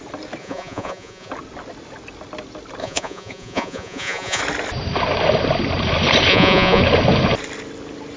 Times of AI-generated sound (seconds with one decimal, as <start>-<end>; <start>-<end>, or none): 0.4-1.3; 2.8-4.4; 6.3-6.8